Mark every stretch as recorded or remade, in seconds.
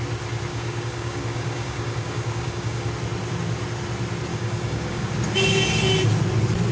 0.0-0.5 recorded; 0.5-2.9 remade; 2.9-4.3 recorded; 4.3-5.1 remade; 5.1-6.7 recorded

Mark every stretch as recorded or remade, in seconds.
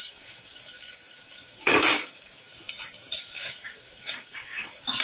0.0-2.5 remade; 2.5-3.2 recorded; 3.2-5.0 remade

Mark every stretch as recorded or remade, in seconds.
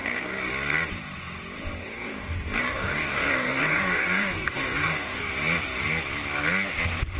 0.0-0.5 remade; 0.5-1.8 recorded; 1.8-5.3 remade; 5.3-7.2 recorded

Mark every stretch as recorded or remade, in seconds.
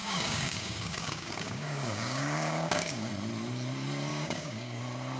0.0-3.1 remade; 3.1-4.1 recorded; 4.1-4.8 remade; 4.8-5.2 recorded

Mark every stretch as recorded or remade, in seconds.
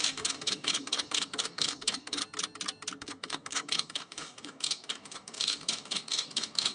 0.0-2.2 remade; 2.2-3.0 recorded; 3.0-6.7 remade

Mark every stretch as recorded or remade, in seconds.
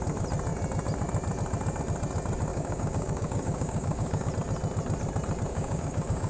0.0-2.5 recorded; 2.5-4.3 remade; 4.3-5.5 recorded; 5.5-6.3 remade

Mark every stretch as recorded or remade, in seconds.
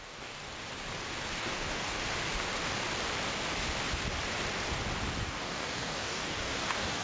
0.0-0.4 remade; 0.4-1.4 recorded; 1.4-2.0 remade; 2.0-5.2 recorded; 5.2-7.0 remade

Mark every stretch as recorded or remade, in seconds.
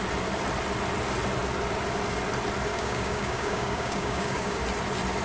0.0-2.7 recorded; 2.7-4.6 remade; 4.6-5.2 recorded